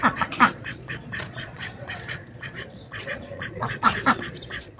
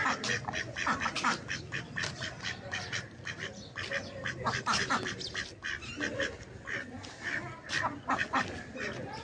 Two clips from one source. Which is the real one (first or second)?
second